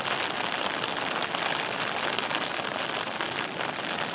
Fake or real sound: real